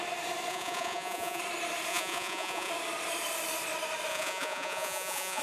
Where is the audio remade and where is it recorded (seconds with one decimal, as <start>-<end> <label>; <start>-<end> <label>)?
0.0-0.5 recorded; 0.5-1.4 remade; 1.4-1.9 recorded; 1.9-2.7 remade; 2.7-4.1 recorded; 4.1-5.4 remade